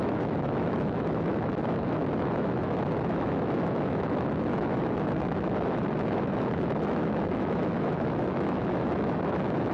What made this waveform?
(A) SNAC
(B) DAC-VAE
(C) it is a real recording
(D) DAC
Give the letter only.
B